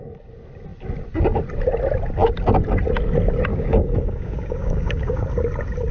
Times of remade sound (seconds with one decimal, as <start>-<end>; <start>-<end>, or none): 3.5-5.2